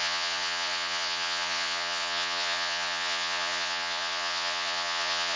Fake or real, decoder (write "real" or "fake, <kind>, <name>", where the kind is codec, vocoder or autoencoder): fake, vocoder, Vocos